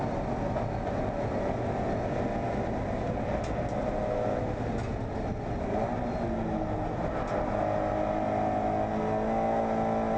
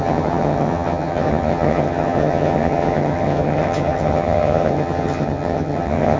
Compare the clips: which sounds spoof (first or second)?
second